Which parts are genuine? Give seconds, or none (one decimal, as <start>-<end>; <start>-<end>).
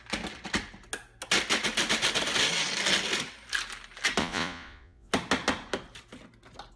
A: 0.0-4.2; 5.1-6.8